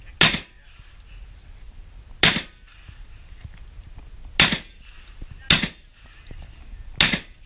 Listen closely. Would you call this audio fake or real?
real